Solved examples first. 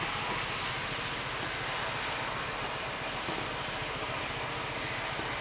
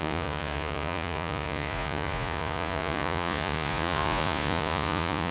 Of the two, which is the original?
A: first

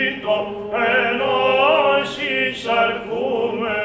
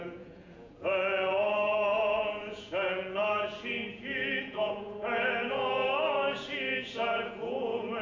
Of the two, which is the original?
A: first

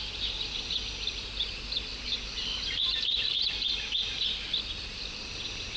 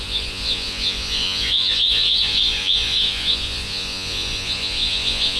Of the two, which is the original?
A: first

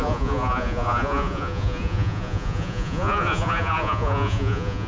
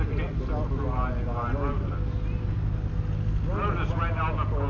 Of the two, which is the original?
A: second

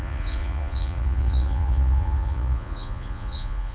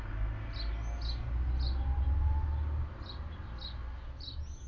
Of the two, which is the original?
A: second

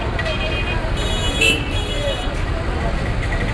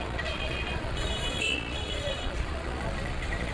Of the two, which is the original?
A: first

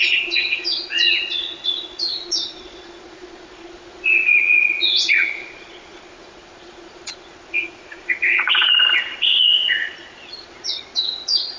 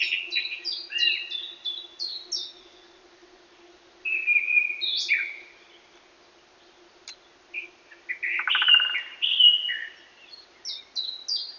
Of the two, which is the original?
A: second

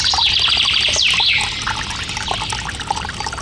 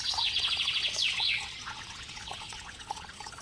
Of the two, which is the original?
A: first